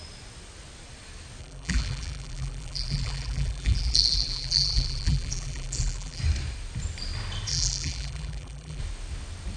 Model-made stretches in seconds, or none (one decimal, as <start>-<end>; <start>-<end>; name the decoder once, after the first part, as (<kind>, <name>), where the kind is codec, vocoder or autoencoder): 1.4-6.2 (vocoder, BigVGAN v2); 7.5-8.8